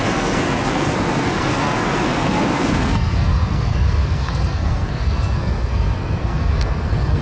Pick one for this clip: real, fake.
fake